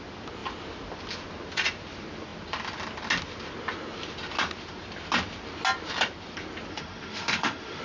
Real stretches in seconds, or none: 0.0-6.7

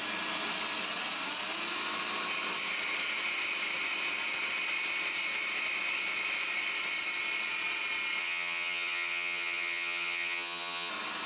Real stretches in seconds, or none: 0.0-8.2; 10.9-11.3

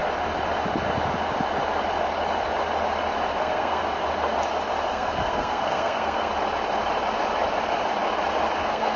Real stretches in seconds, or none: 0.0-3.4; 3.8-4.9; 6.3-8.6

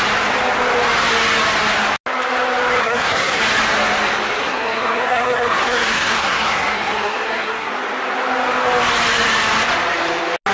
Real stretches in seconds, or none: 0.0-2.8; 3.4-4.4; 7.7-10.5